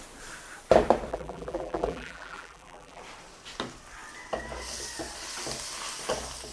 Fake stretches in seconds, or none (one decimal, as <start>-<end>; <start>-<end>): 1.1-3.0